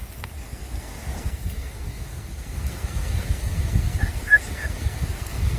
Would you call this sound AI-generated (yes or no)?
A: yes